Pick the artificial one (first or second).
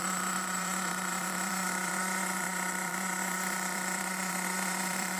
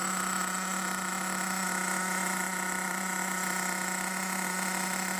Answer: first